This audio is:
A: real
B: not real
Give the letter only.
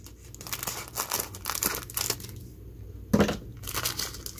A